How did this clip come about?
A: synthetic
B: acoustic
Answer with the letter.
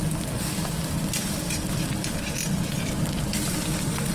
B